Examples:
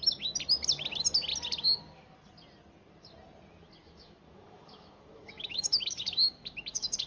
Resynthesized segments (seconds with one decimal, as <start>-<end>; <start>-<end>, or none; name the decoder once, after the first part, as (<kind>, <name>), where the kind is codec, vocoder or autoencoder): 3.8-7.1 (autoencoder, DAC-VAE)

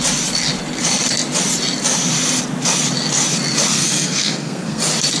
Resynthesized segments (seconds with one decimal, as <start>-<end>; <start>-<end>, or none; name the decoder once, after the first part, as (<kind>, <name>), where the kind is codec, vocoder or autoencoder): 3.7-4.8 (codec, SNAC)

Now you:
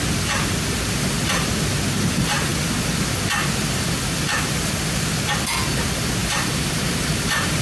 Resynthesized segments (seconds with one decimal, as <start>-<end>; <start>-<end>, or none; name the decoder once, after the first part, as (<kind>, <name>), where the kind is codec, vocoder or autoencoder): 6.2-7.6 (vocoder, BigVGAN v2)

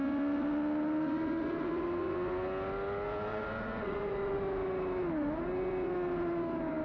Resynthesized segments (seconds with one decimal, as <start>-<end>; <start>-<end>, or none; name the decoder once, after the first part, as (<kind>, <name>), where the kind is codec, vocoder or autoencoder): 3.3-4.4 (vocoder, Vocos)

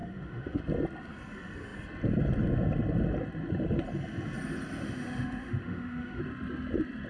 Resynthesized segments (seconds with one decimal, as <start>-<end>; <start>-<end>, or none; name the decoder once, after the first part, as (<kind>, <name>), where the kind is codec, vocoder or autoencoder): 0.0-0.6 (autoencoder, DAC-VAE); 4.8-6.2

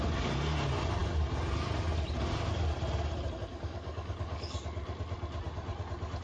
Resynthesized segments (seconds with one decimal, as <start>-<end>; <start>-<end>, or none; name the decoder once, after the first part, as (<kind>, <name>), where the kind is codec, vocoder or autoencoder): 3.5-4.6 (codec, DAC)